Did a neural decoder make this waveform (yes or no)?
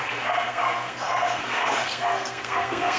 yes